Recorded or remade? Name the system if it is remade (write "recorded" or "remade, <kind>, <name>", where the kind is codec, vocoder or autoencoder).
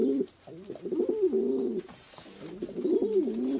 recorded